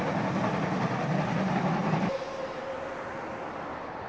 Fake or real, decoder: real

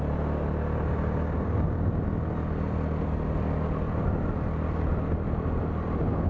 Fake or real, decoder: real